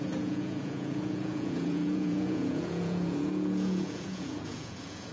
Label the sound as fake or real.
fake